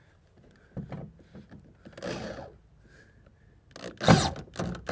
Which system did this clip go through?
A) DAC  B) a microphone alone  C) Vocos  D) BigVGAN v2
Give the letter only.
B